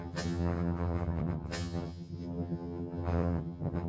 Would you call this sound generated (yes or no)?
yes